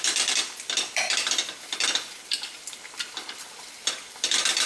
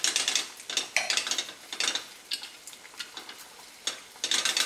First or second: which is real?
second